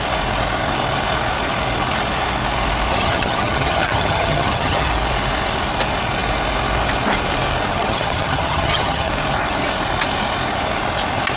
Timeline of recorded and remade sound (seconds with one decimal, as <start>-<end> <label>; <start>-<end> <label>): 0.0-2.9 recorded; 2.9-4.9 remade; 4.9-7.7 recorded; 7.7-9.1 remade; 9.1-11.4 recorded